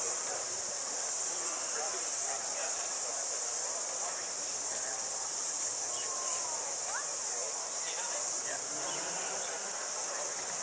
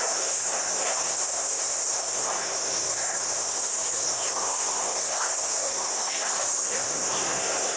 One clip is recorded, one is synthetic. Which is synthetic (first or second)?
second